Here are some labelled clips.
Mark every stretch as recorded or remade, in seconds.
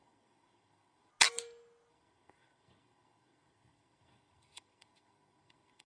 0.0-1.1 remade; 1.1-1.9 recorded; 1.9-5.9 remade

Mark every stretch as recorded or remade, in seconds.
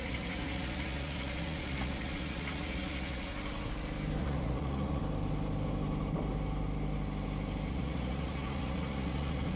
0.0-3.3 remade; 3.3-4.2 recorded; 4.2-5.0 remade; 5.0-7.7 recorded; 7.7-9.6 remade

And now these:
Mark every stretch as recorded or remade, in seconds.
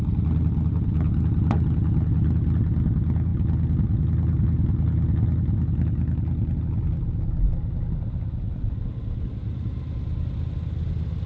0.0-11.3 recorded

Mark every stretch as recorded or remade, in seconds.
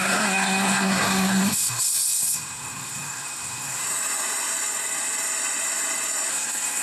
0.0-3.8 remade; 3.8-6.3 recorded; 6.3-6.8 remade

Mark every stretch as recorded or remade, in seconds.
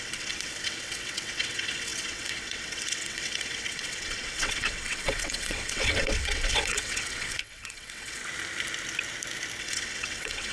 0.0-8.2 remade; 8.2-9.6 recorded; 9.6-10.5 remade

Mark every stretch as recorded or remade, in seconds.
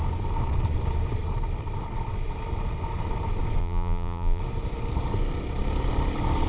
0.0-3.6 recorded; 3.6-4.4 remade; 4.4-6.5 recorded